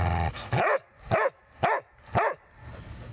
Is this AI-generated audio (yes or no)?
no